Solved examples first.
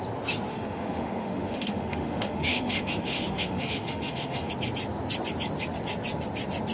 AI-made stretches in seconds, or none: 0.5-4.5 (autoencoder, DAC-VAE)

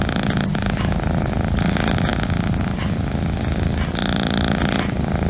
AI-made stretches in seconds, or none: none

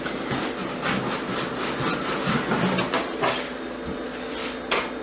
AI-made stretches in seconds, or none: none

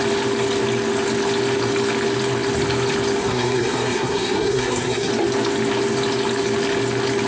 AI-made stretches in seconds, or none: 3.2-5.1 (codec, SNAC)